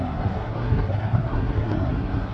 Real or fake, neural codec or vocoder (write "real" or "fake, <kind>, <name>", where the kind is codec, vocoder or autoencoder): fake, codec, SNAC